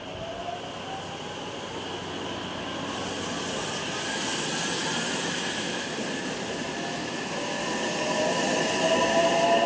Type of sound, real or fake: real